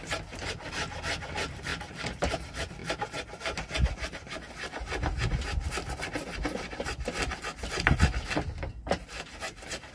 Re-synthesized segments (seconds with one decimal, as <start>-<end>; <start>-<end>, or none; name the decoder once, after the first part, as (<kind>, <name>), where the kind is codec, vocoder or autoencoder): none